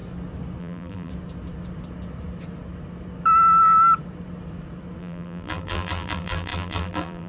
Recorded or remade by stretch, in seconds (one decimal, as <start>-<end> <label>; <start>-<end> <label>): 0.0-0.6 recorded; 0.6-1.1 remade; 1.1-5.0 recorded; 5.0-7.3 remade